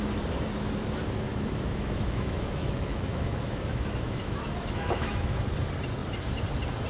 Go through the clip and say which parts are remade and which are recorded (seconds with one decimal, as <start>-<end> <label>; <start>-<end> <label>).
0.0-1.3 recorded; 1.3-5.4 remade; 5.4-6.9 recorded